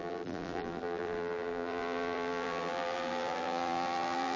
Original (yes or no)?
no